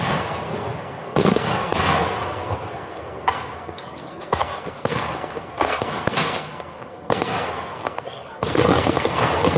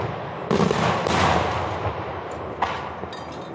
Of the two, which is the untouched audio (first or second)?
second